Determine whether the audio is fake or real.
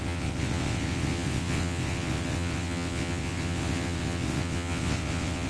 fake